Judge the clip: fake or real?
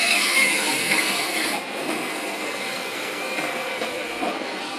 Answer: fake